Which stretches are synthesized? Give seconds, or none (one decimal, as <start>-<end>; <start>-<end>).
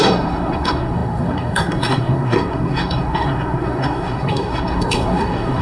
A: 0.0-5.6